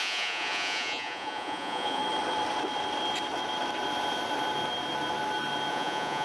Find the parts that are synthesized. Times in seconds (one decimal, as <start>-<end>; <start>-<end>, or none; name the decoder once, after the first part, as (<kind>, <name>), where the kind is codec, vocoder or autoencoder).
0.0-2.0 (vocoder, Vocos); 5.7-6.2